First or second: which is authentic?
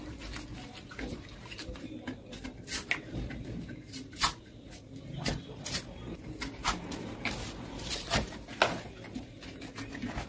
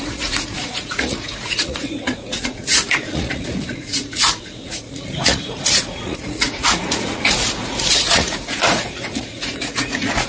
first